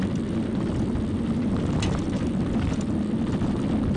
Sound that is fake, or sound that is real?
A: fake